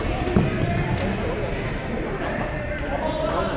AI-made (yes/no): no